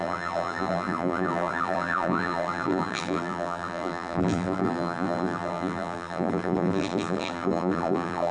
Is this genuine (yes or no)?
no